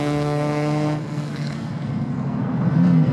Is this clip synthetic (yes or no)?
yes